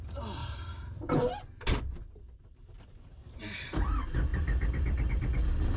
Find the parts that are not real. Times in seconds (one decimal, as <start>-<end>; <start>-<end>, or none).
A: none